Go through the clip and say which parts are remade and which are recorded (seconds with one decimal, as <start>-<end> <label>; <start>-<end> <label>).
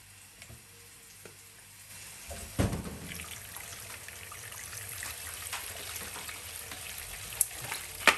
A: 0.0-3.7 recorded; 3.7-5.4 remade; 5.4-8.2 recorded